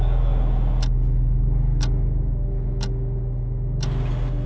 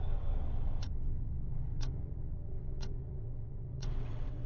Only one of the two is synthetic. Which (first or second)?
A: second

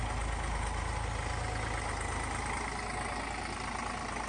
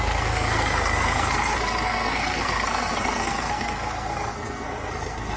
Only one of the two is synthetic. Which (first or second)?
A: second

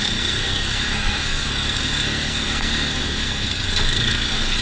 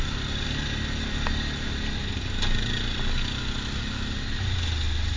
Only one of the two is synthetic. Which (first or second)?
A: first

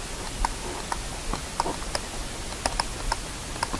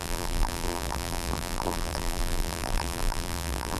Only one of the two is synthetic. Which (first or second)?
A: second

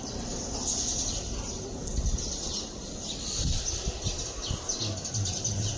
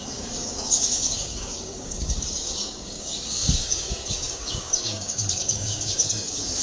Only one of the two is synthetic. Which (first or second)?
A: second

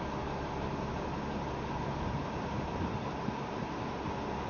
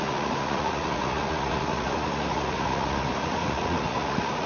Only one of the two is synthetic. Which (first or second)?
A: second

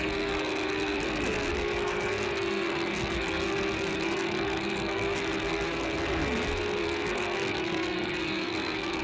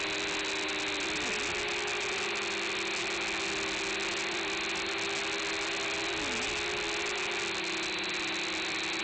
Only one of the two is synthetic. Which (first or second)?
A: first